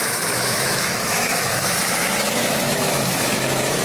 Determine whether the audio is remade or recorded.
remade